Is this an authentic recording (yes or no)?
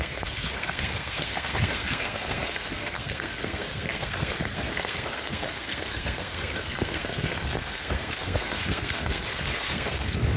no